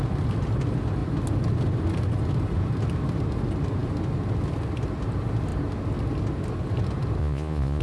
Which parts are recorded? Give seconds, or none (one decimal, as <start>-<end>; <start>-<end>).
0.0-7.2

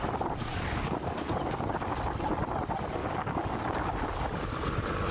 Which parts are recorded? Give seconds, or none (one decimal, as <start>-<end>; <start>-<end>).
0.0-0.5; 1.3-3.0; 3.6-5.1